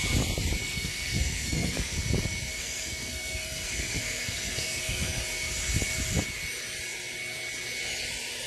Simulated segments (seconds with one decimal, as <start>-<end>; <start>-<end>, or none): 0.6-1.9; 2.5-5.2